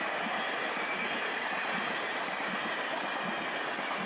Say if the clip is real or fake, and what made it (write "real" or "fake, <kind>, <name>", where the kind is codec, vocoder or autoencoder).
real